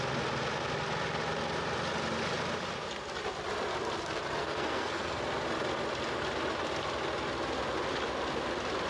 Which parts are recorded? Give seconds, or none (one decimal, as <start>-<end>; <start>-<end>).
0.0-4.4; 5.2-8.9